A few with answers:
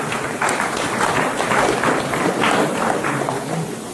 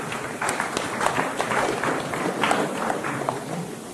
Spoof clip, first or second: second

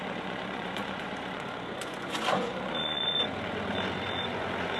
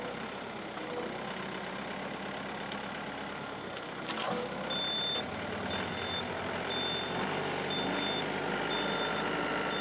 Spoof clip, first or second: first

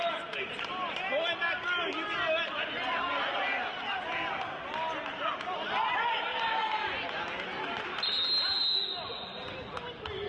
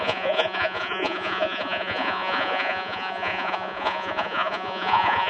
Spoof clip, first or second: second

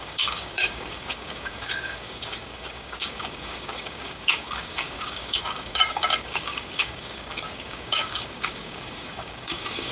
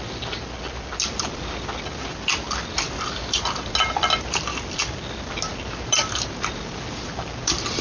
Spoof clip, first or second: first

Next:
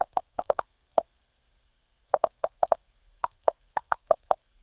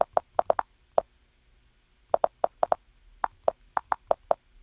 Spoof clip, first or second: first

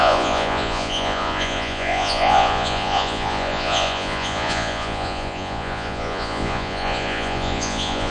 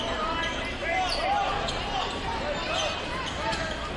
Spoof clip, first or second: first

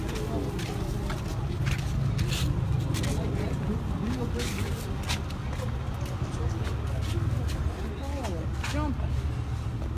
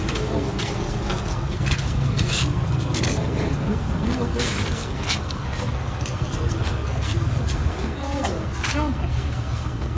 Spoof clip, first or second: second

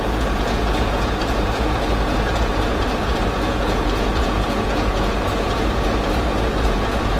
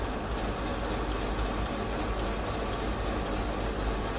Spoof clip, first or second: first